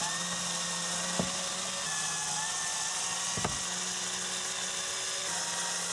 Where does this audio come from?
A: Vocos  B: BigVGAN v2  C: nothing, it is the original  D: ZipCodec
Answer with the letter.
C